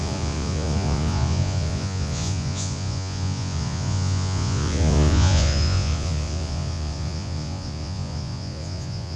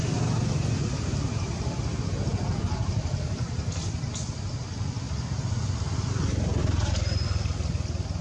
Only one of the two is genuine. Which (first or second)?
second